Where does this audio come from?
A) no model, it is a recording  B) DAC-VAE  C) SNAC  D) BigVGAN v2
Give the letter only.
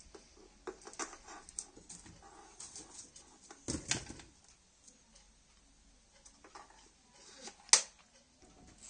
A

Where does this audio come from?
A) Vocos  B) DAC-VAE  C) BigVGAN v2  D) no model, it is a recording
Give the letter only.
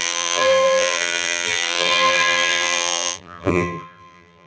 C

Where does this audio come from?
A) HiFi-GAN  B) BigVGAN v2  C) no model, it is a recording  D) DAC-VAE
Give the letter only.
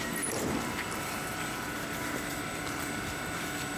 C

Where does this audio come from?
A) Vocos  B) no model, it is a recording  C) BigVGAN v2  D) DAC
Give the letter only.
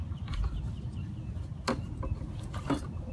B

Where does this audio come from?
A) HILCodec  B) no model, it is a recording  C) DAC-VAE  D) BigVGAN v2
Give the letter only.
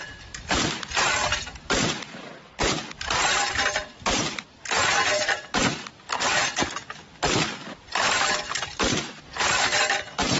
D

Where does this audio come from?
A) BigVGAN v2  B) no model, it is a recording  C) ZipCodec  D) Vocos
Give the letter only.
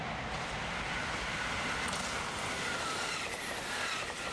B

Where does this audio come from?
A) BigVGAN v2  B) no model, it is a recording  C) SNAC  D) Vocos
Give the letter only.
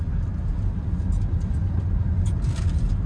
B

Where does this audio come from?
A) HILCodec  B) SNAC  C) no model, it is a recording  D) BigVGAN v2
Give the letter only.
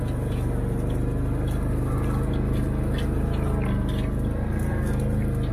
C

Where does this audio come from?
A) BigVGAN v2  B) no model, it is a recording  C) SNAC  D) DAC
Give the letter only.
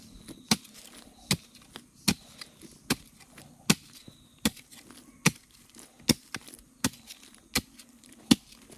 B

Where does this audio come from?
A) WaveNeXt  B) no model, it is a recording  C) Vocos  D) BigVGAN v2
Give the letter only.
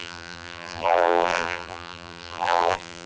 D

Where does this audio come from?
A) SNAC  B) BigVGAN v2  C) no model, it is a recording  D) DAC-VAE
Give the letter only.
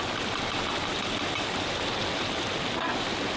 C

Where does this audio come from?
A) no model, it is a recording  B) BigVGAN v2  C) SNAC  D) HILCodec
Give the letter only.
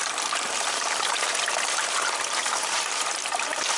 B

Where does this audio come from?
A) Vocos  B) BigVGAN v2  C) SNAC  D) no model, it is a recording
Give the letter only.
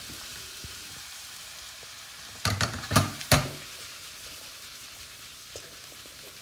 B